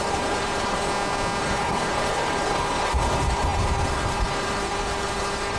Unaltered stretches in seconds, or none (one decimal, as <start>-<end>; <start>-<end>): 0.9-1.4